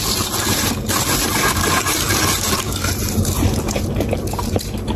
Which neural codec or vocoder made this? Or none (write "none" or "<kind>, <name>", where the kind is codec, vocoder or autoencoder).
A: vocoder, BigVGAN v2